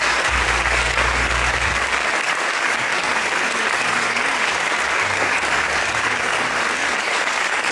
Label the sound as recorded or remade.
remade